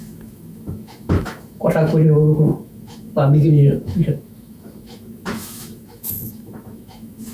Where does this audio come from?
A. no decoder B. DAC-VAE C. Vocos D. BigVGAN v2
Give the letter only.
B